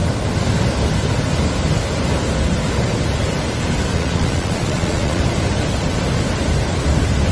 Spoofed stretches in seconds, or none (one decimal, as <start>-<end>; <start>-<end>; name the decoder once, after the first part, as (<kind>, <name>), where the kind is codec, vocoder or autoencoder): 3.9-5.2 (vocoder, Vocos)